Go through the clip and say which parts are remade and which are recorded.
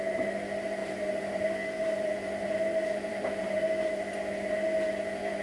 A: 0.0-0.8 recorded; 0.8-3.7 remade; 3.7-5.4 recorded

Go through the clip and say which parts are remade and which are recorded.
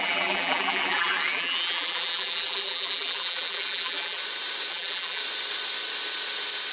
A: 0.0-4.2 remade; 4.2-4.7 recorded; 4.7-5.2 remade; 5.2-6.7 recorded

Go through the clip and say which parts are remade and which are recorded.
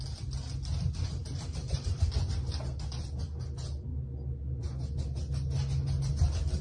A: 0.0-1.2 recorded; 1.2-2.1 remade; 2.1-6.6 recorded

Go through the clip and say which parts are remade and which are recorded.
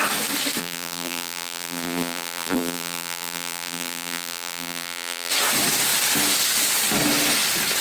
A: 0.0-0.6 recorded; 0.6-5.3 remade; 5.3-7.8 recorded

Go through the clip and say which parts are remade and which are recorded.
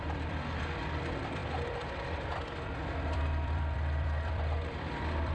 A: 0.0-5.3 remade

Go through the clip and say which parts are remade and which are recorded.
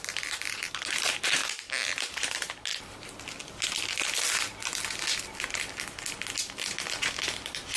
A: 0.0-2.7 remade; 2.7-7.8 recorded